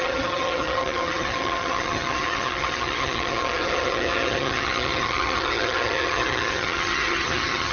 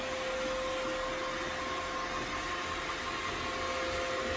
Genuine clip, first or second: second